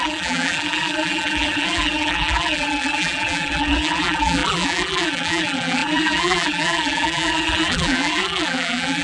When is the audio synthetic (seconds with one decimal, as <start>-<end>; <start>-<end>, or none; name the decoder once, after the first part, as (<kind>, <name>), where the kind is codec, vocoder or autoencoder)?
0.0-9.0 (vocoder, BigVGAN v2)